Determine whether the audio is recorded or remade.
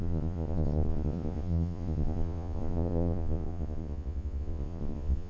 remade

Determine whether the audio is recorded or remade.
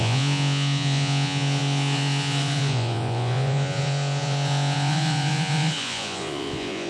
remade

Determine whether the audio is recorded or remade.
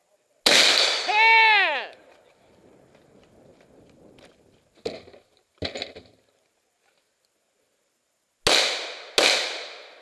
recorded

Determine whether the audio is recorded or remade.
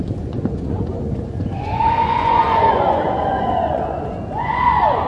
remade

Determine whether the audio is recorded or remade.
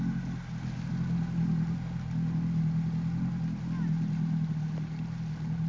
recorded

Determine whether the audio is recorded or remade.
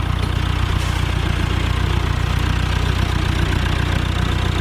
recorded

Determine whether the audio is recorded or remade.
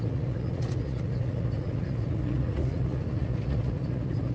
remade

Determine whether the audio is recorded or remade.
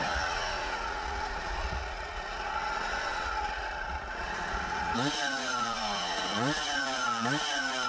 remade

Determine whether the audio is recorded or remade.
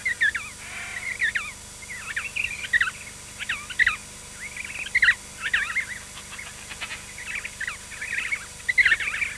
recorded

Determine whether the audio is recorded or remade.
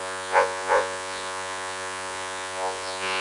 remade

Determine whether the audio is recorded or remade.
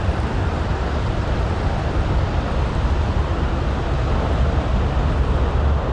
recorded